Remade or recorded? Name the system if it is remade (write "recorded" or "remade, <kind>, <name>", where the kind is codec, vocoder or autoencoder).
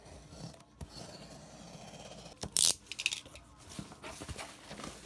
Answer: recorded